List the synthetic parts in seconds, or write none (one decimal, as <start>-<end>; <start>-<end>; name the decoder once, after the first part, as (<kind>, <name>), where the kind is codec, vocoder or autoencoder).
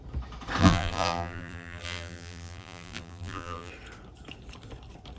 0.6-3.7 (vocoder, BigVGAN v2)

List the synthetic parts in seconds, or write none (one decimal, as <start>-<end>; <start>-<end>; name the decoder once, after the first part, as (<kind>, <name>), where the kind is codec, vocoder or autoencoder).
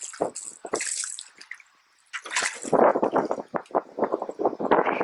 0.5-2.3 (vocoder, BigVGAN v2)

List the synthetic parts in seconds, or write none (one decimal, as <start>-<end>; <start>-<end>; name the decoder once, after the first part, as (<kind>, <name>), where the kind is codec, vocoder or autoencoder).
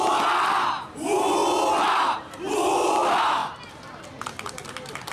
none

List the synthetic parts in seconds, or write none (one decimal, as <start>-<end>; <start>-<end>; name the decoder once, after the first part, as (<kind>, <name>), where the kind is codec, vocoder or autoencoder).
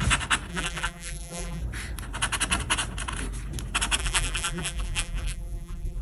0.5-1.6 (vocoder, BigVGAN v2); 4.0-6.0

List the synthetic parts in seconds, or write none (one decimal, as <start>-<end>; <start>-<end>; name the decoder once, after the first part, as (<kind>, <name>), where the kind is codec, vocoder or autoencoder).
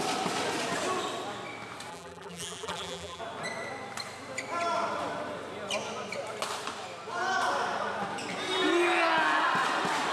1.9-3.2 (vocoder, BigVGAN v2)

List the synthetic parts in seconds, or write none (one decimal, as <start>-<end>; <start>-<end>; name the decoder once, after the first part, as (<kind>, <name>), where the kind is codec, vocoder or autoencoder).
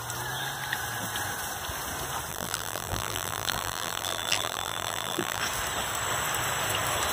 2.3-5.4 (vocoder, BigVGAN v2)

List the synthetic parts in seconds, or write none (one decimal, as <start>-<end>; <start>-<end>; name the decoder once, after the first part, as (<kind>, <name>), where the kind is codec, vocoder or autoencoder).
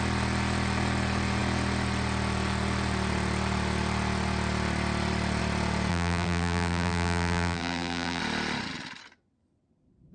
5.9-8.2 (vocoder, BigVGAN v2)